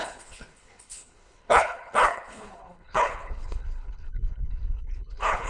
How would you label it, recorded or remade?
remade